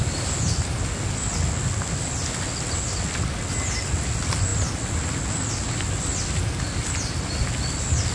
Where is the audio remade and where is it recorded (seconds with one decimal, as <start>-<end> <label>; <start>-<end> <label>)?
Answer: 0.0-8.1 recorded